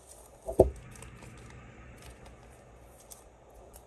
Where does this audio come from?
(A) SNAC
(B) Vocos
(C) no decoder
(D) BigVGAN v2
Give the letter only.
C